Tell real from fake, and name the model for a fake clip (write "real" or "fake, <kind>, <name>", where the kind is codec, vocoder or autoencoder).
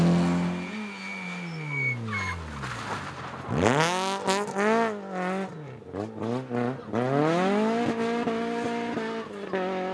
real